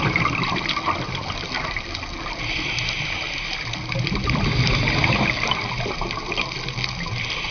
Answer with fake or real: real